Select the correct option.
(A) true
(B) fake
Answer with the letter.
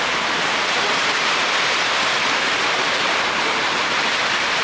B